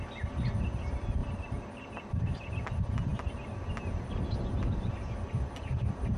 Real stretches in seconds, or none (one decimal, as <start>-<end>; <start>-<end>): 0.0-1.2; 2.5-6.2